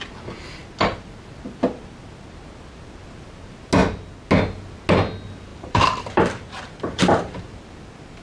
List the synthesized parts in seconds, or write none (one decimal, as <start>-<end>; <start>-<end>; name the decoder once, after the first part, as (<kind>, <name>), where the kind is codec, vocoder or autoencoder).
5.5-7.4 (vocoder, BigVGAN v2)